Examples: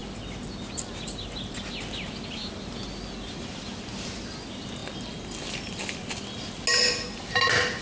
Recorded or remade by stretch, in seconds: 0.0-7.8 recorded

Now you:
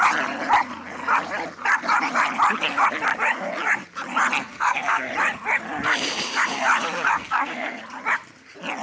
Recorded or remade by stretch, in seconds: 0.0-4.4 recorded; 4.4-5.1 remade; 5.1-7.1 recorded; 7.1-7.8 remade; 7.8-8.8 recorded

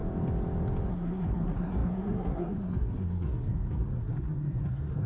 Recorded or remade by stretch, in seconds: 0.0-0.9 recorded; 0.9-5.1 remade

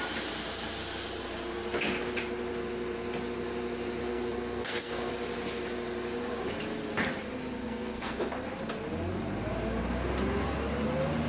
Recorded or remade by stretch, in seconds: 0.0-4.0 recorded; 4.0-5.1 remade; 5.1-7.6 recorded; 7.6-8.2 remade; 8.2-11.3 recorded

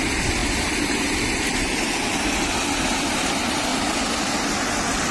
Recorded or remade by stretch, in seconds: 0.0-5.1 recorded